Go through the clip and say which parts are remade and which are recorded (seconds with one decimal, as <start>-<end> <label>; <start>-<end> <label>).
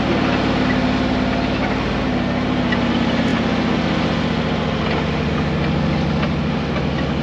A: 0.0-7.2 recorded